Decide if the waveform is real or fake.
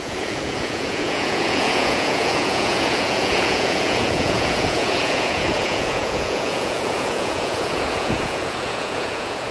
fake